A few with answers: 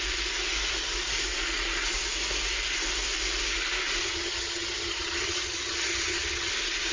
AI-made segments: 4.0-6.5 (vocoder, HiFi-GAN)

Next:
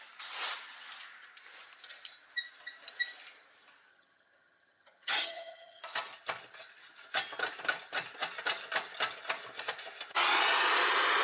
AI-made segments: 3.9-5.8 (vocoder, HiFi-GAN)

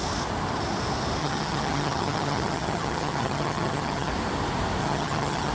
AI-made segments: 1.2-4.1 (vocoder, HiFi-GAN); 4.8-5.5

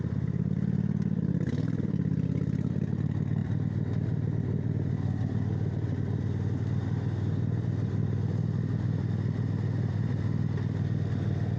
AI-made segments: none

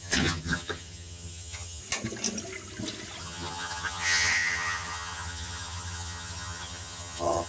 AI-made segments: 0.0-1.8 (vocoder, HiFi-GAN); 3.2-7.5

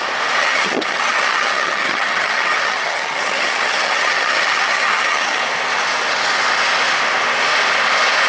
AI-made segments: 0.4-5.4 (vocoder, HiFi-GAN)

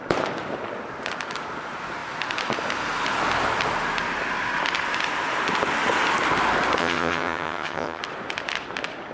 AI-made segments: 6.8-8.0 (vocoder, HiFi-GAN)

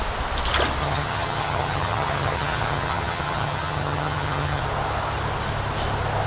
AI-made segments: 0.8-4.6 (vocoder, HiFi-GAN)